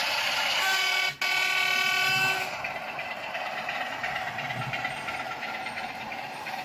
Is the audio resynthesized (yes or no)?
no